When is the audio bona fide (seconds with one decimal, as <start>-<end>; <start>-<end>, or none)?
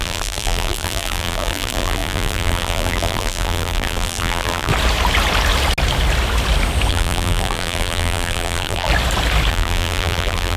4.7-6.9; 8.9-9.5